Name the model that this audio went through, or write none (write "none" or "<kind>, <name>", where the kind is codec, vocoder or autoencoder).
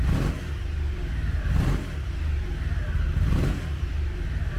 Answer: none